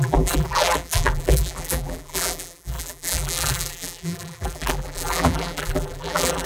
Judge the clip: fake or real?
fake